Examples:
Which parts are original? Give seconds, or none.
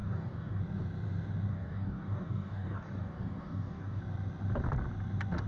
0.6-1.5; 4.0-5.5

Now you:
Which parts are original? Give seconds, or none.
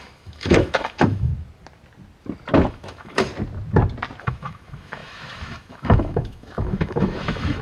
1.3-2.7; 3.3-4.2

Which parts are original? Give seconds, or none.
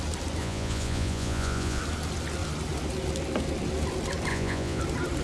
0.0-0.4; 1.8-4.3; 4.8-5.2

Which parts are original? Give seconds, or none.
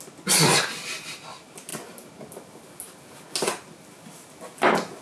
0.0-5.0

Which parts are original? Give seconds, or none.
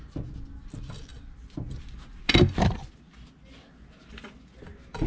0.0-5.1